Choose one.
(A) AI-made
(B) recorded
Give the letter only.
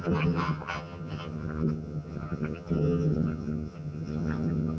A